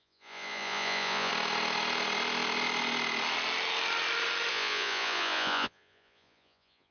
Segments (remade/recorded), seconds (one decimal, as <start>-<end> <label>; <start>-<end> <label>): 0.0-1.3 remade; 1.3-4.5 recorded; 4.5-6.9 remade

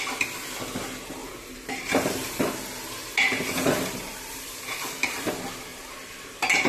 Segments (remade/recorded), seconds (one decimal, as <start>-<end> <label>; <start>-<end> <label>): 0.0-1.2 recorded; 1.2-2.5 remade; 2.5-3.0 recorded; 3.0-5.3 remade; 5.3-5.7 recorded; 5.7-6.7 remade